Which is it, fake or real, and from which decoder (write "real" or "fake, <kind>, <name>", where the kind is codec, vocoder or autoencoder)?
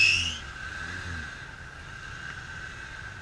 real